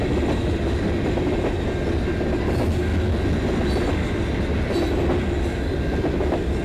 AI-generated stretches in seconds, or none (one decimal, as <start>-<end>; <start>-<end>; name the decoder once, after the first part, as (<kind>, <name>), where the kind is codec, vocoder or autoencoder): none